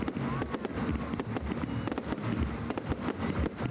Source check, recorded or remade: recorded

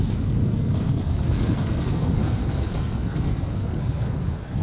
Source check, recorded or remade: remade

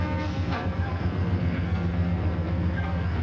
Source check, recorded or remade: remade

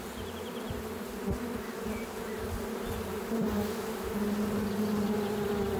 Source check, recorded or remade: recorded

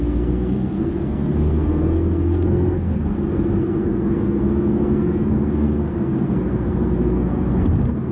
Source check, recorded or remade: remade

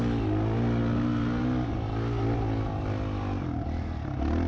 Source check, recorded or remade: recorded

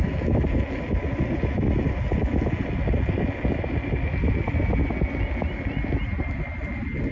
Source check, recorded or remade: recorded